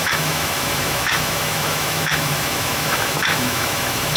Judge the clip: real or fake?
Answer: fake